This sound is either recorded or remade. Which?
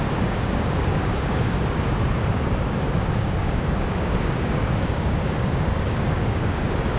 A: remade